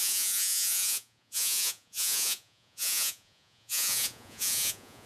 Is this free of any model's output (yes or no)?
no